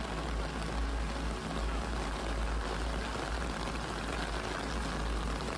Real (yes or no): yes